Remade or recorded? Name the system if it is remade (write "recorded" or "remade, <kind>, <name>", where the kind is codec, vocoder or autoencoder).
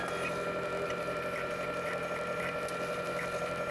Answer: recorded